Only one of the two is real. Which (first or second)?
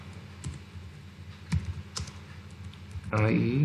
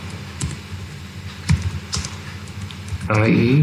first